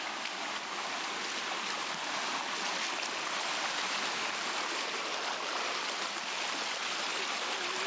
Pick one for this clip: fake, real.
real